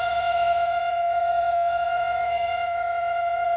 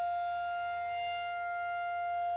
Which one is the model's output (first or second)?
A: first